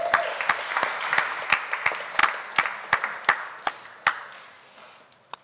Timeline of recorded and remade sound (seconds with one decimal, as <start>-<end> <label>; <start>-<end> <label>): 0.0-5.4 recorded